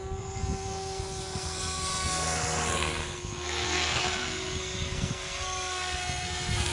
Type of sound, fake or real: fake